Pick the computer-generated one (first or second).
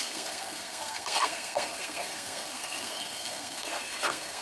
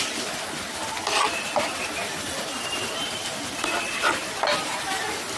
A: first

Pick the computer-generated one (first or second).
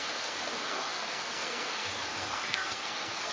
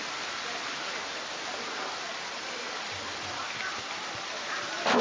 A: first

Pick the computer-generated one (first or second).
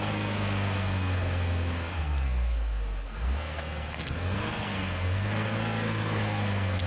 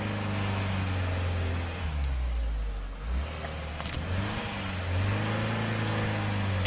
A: first